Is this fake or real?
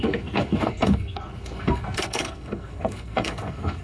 fake